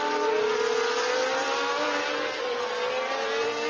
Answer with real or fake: real